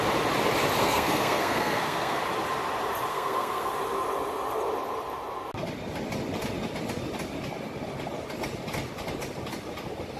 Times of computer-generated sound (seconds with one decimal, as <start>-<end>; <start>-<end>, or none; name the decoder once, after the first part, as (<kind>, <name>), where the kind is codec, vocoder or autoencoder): 0.8-2.2 (codec, SNAC); 3.1-3.7

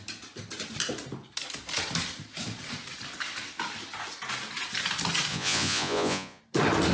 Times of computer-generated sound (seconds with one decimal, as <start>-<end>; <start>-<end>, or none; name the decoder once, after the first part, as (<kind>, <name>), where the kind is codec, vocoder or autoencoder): 5.3-6.4 (vocoder, Vocos)